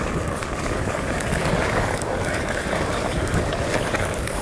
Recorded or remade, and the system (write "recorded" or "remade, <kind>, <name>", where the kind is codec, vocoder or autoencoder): remade, codec, DAC